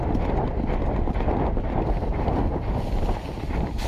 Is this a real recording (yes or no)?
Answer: yes